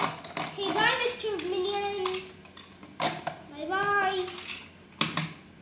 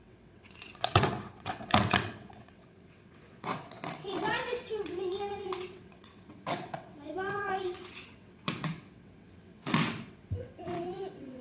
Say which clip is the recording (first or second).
first